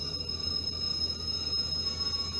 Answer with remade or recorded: recorded